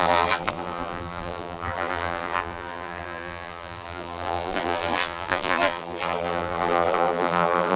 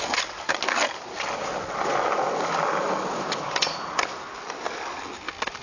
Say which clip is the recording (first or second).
second